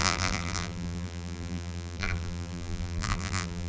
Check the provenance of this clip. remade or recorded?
remade